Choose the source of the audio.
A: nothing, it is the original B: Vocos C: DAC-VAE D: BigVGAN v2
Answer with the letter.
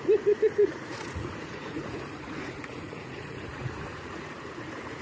B